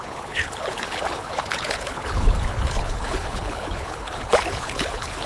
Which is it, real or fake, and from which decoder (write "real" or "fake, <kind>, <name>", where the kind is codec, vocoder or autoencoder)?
fake, codec, HILCodec